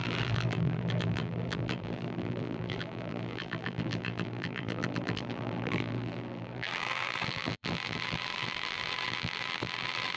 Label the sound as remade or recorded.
remade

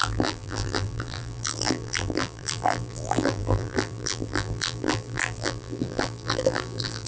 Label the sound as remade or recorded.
remade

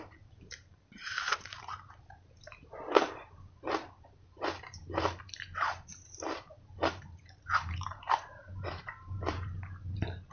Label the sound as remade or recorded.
remade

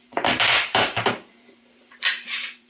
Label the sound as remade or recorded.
remade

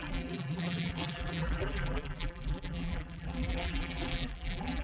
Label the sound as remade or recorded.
remade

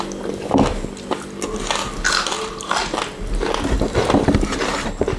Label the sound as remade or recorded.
recorded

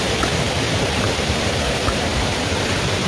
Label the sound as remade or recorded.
remade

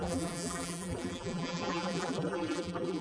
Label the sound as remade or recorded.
remade